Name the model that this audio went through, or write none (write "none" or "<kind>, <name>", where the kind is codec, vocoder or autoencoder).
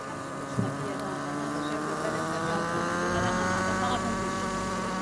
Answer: none